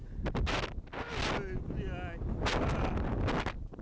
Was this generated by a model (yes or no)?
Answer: no